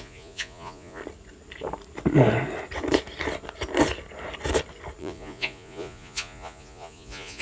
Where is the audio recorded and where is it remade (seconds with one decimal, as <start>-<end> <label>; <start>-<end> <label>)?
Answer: 0.0-1.0 remade; 1.0-5.0 recorded; 5.0-7.4 remade